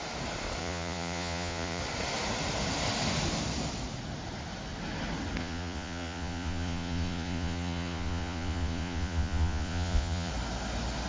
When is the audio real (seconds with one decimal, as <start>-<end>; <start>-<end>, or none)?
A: 0.0-0.6; 1.8-5.4; 10.3-11.1